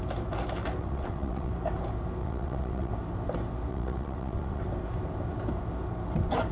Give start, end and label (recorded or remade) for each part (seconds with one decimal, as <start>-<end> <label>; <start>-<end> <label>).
0.0-0.8 recorded; 0.8-1.5 remade; 1.5-2.2 recorded; 2.2-2.9 remade; 2.9-3.7 recorded; 3.7-4.6 remade; 4.6-6.5 recorded